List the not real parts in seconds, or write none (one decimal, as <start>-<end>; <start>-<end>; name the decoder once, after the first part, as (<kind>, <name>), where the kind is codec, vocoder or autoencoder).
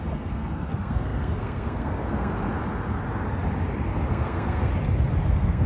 0.0-2.3 (codec, SNAC); 4.1-4.7; 5.3-5.7